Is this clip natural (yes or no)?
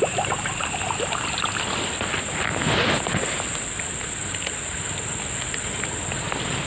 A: yes